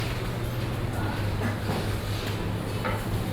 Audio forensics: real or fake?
real